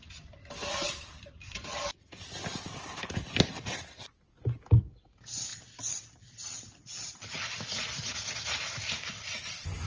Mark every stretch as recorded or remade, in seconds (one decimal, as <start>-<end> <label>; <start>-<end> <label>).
0.0-9.9 remade